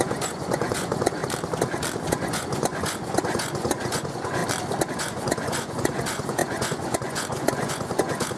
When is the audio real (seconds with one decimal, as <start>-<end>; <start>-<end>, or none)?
1.2-2.1; 4.4-4.9